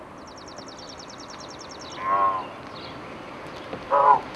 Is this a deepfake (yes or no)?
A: no